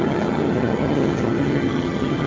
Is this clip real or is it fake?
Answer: fake